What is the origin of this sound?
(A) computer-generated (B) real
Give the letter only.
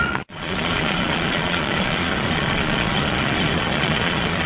A